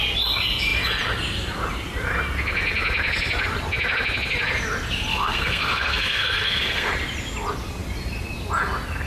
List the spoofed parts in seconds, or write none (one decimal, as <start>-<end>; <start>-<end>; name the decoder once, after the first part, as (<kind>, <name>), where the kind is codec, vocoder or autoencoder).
5.1-6.9 (codec, SNAC)